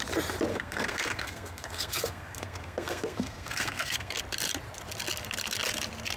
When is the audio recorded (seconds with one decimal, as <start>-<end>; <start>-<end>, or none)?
0.0-0.5; 4.2-6.2